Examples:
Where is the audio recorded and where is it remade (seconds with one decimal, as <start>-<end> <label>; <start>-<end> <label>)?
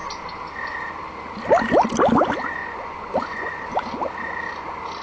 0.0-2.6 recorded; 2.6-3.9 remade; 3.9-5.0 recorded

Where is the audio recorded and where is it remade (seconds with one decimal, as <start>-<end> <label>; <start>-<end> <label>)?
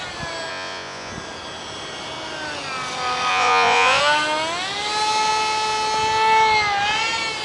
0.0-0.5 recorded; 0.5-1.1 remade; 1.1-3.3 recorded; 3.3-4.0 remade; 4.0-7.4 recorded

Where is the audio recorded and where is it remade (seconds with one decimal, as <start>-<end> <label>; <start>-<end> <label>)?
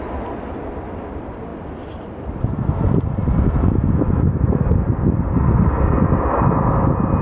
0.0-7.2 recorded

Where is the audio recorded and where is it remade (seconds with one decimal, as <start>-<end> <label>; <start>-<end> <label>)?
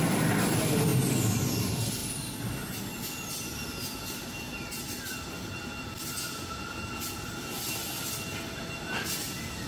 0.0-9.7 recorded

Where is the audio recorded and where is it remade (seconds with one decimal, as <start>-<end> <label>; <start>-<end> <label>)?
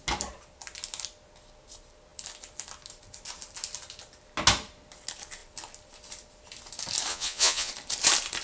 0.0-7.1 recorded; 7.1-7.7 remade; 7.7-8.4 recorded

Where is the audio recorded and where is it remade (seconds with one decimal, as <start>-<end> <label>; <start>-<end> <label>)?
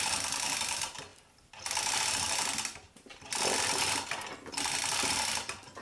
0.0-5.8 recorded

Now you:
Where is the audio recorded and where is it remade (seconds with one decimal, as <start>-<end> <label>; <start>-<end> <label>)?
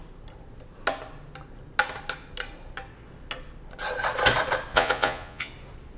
0.0-4.7 recorded; 4.7-5.5 remade; 5.5-6.0 recorded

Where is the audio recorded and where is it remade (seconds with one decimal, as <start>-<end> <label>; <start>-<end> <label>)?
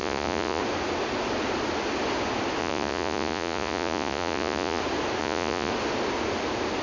0.0-0.6 remade; 0.6-2.6 recorded; 2.6-4.8 remade; 4.8-5.2 recorded; 5.2-5.7 remade; 5.7-6.8 recorded